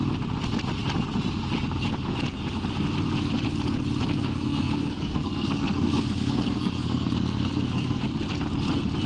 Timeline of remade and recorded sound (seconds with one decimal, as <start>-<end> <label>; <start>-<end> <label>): 0.0-4.1 recorded; 4.1-8.0 remade; 8.0-9.1 recorded